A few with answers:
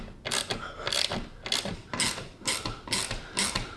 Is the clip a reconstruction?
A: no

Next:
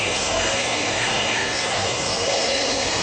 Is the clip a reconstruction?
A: yes